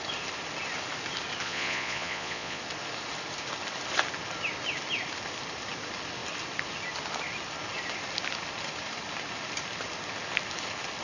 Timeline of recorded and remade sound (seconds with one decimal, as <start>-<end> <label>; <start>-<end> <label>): 0.0-1.4 recorded; 1.4-2.6 remade; 2.6-11.0 recorded